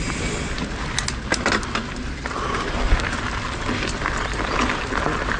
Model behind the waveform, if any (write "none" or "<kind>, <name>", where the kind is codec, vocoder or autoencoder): none